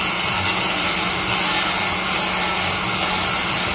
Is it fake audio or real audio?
real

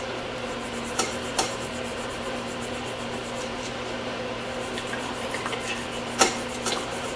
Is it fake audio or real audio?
fake